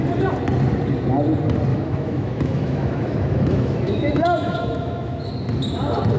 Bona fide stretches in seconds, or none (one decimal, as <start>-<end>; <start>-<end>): 0.0-1.7; 5.3-6.2